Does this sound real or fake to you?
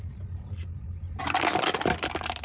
fake